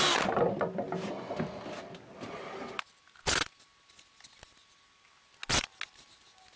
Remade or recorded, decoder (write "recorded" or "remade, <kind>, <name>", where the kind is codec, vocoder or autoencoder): recorded